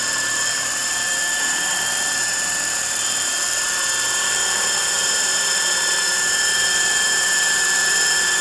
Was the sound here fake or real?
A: fake